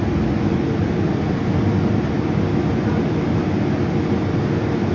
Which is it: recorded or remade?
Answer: recorded